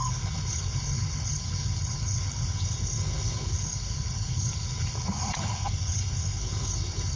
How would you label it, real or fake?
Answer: fake